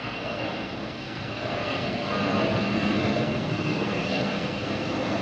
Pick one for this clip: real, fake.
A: fake